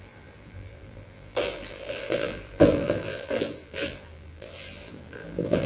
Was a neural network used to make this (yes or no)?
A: yes